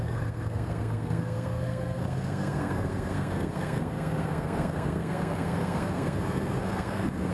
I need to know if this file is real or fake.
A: fake